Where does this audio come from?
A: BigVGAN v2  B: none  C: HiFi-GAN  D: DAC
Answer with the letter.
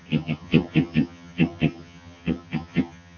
C